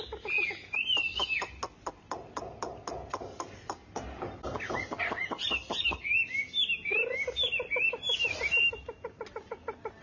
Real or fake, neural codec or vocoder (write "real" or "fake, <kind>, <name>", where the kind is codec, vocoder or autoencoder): real